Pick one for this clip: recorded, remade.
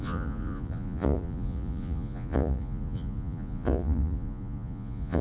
remade